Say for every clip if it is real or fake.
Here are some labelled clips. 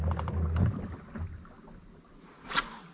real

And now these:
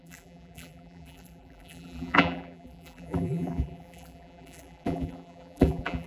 fake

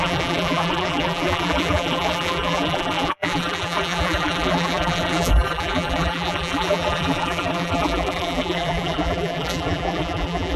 fake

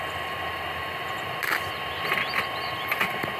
real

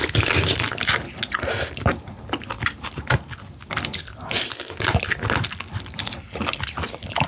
real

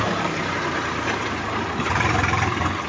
fake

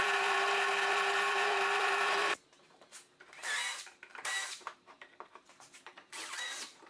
fake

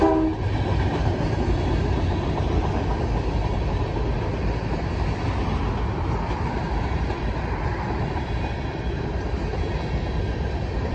real